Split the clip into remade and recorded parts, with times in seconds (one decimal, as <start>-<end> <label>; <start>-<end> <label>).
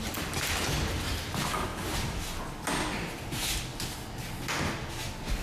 0.0-5.4 recorded